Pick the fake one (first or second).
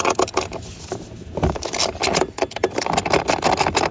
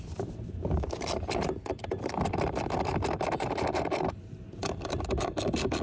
second